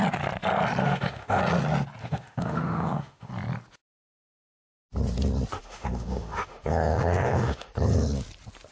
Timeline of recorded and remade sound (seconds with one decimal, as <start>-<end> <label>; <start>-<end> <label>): 0.0-0.8 recorded; 0.8-1.4 remade; 1.4-2.0 recorded; 2.0-3.3 remade; 3.3-5.6 recorded; 5.6-7.7 remade; 7.7-8.7 recorded